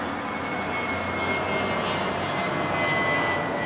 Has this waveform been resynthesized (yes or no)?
no